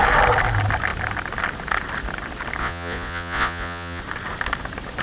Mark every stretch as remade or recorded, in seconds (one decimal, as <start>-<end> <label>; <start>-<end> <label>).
0.0-2.6 recorded; 2.6-4.0 remade; 4.0-5.0 recorded